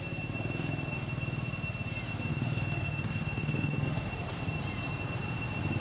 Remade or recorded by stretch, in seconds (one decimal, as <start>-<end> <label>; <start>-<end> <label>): 0.0-2.3 recorded; 2.3-4.1 remade; 4.1-5.8 recorded